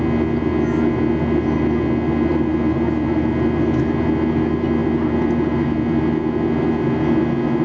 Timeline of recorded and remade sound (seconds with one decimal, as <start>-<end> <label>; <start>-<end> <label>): 0.0-2.3 recorded; 2.3-3.8 remade; 3.8-4.8 recorded; 4.8-5.5 remade; 5.5-7.6 recorded